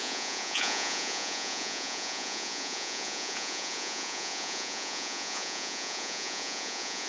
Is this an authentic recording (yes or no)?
no